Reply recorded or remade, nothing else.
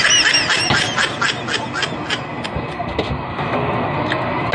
recorded